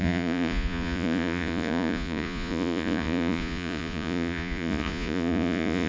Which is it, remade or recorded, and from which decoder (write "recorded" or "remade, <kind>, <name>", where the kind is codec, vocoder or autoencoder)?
remade, vocoder, Vocos